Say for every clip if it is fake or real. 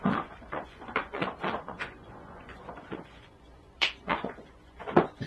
fake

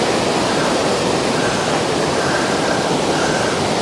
real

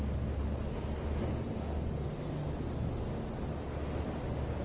real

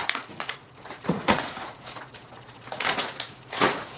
fake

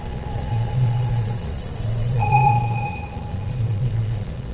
fake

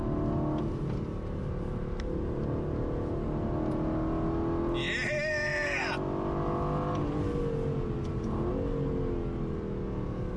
real